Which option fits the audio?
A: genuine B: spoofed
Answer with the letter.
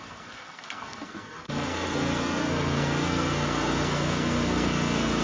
B